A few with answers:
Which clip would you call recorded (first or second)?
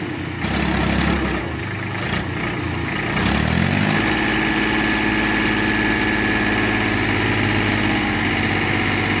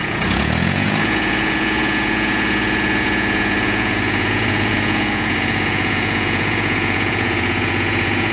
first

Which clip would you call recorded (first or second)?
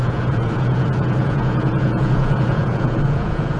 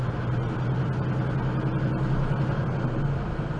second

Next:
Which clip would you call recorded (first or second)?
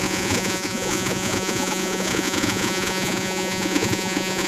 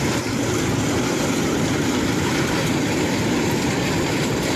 second